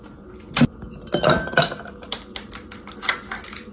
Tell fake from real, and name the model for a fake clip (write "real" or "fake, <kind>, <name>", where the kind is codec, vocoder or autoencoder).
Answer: real